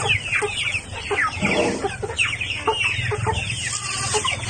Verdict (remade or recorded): recorded